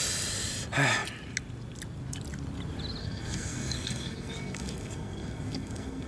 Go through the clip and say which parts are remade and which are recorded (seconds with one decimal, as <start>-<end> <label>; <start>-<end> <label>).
0.0-3.0 recorded; 3.0-6.1 remade